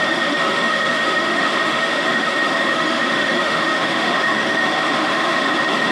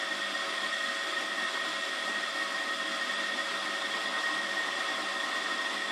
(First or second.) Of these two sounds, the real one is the second